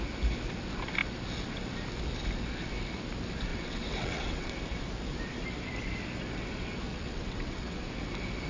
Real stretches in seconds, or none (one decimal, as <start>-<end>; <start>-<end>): 0.0-3.5; 4.5-6.9; 7.8-8.5